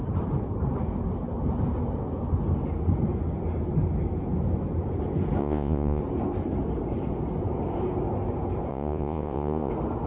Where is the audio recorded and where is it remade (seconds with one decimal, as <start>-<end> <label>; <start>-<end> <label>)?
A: 0.0-5.4 recorded; 5.4-6.0 remade; 6.0-8.7 recorded; 8.7-9.7 remade; 9.7-10.1 recorded